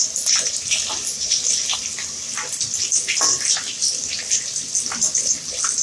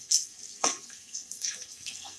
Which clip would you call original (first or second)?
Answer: first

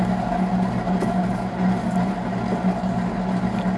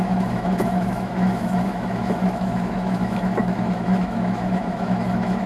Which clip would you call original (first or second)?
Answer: first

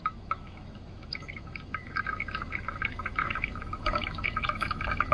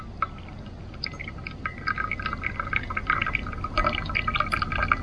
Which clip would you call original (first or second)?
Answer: second